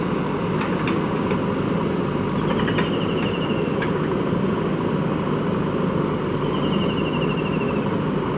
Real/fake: real